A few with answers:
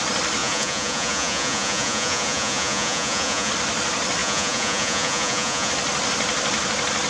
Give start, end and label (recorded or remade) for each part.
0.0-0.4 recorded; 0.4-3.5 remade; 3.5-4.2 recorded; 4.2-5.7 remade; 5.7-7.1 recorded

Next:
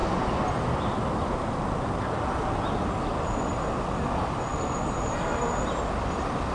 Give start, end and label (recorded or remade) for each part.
0.0-6.5 recorded